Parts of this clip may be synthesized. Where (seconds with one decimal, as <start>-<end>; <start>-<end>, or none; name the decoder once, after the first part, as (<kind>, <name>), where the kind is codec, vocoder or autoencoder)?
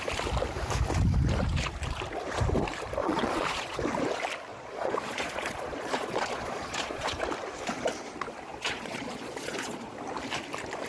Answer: 3.0-3.8 (vocoder, Vocos); 4.5-7.2; 8.5-9.9